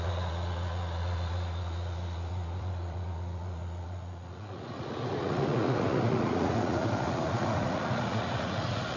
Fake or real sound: fake